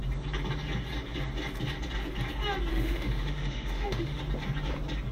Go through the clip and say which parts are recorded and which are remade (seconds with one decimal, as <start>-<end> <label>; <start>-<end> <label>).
0.0-2.7 recorded; 2.7-4.2 remade; 4.2-5.1 recorded